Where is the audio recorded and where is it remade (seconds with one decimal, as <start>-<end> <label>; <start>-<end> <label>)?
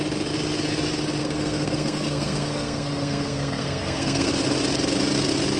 0.0-1.2 recorded; 1.2-4.3 remade; 4.3-5.6 recorded